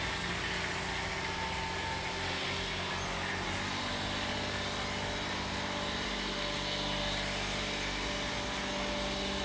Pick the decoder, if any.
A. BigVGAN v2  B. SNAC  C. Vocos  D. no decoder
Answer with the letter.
D